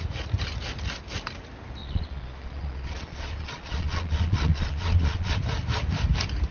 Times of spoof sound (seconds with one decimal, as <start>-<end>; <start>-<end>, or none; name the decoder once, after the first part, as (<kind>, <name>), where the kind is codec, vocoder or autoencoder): 1.8-5.4 (vocoder, Vocos)